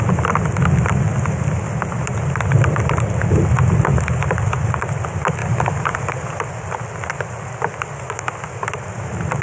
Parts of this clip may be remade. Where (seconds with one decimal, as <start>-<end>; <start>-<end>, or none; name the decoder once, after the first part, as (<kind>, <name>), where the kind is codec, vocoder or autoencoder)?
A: 5.4-6.4 (vocoder, BigVGAN v2)